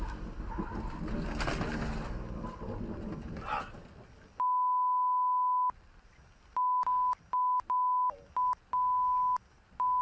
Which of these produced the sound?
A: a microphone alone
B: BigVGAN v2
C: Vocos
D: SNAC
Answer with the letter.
A